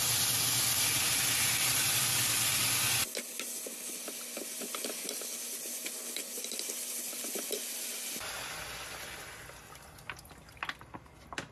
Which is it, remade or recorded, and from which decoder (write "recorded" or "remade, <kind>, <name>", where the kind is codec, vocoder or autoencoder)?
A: recorded